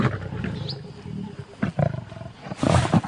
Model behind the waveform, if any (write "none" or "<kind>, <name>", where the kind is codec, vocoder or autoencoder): none